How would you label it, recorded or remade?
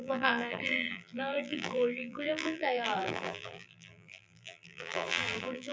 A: remade